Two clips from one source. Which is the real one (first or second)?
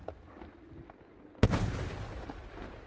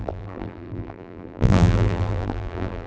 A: first